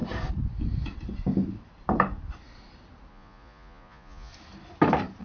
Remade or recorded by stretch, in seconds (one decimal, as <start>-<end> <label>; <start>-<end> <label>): 0.0-3.1 recorded; 3.1-4.3 remade; 4.3-5.2 recorded